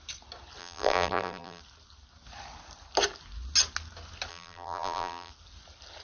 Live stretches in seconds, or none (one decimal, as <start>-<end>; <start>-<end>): 0.0-0.6; 1.6-4.3; 5.3-6.0